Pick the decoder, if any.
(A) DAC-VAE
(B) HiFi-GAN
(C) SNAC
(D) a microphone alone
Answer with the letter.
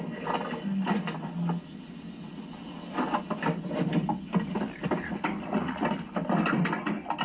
D